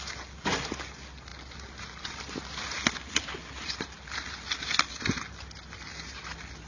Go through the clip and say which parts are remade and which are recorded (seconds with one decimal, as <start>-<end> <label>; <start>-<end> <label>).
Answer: 0.0-6.7 recorded